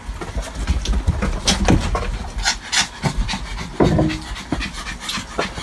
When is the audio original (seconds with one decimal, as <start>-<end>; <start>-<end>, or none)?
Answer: 0.0-5.6